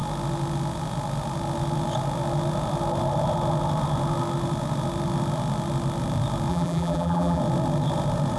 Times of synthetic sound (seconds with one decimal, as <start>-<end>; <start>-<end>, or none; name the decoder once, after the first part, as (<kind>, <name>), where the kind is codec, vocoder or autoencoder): 6.5-7.4 (vocoder, BigVGAN v2)